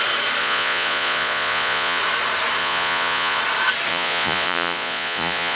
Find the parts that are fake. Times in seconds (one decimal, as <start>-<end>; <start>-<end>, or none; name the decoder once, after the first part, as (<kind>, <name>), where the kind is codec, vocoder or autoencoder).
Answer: 0.4-2.0 (vocoder, Vocos); 2.6-3.4; 3.9-5.6